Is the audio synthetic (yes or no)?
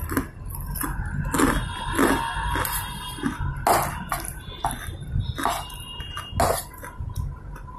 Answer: no